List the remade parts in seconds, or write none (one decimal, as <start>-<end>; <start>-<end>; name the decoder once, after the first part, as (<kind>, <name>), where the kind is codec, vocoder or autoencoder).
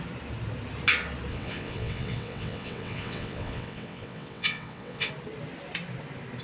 1.3-5.1 (vocoder, WaveNeXt)